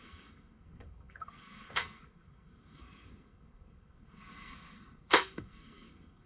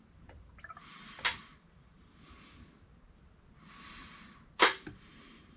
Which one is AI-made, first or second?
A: first